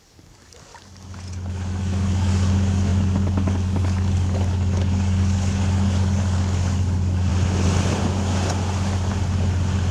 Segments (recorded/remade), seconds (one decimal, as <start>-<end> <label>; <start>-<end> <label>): 0.0-0.7 remade; 0.7-1.5 recorded; 1.5-7.3 remade; 7.3-9.9 recorded